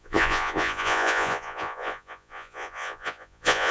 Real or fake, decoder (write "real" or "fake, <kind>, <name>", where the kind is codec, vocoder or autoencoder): fake, vocoder, Vocos